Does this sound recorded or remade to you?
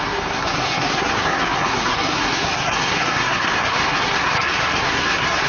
remade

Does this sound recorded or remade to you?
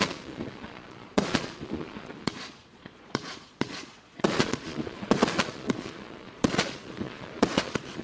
remade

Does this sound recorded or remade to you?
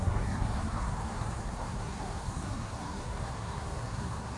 remade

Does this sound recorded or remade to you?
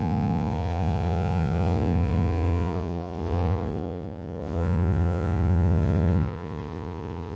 remade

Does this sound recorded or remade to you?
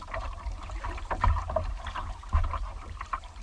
remade